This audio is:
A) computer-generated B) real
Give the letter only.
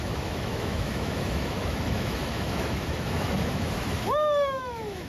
A